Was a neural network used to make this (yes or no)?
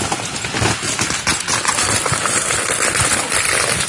no